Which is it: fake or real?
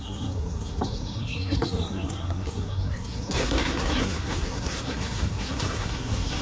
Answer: fake